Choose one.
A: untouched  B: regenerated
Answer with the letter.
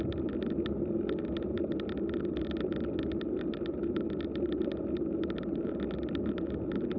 A